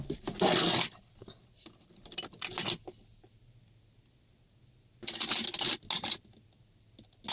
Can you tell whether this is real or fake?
real